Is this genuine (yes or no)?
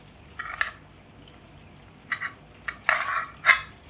yes